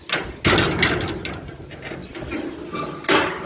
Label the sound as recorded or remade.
recorded